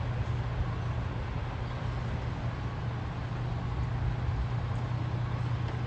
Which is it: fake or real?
real